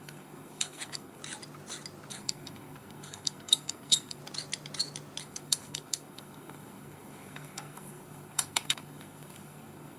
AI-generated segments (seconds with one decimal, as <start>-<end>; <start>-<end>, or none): 0.0-1.2; 2.1-4.2; 5.2-10.0